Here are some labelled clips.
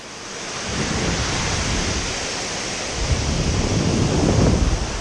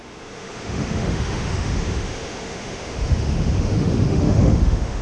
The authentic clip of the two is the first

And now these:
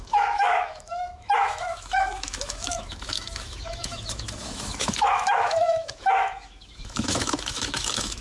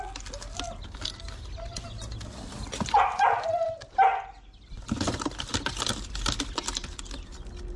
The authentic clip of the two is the second